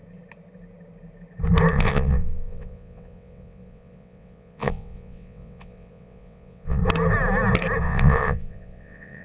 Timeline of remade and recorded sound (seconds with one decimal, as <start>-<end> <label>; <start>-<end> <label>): 0.0-1.7 recorded; 1.7-6.8 remade; 6.8-7.8 recorded; 7.8-9.2 remade